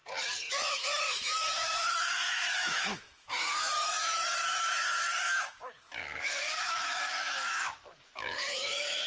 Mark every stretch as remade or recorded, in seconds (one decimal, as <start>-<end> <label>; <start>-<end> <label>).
0.0-0.5 recorded; 0.5-9.1 remade